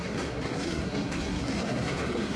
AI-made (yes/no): yes